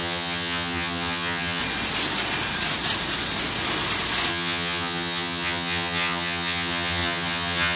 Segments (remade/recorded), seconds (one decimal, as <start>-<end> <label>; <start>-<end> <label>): 0.0-1.6 remade; 1.6-4.3 recorded; 4.3-7.8 remade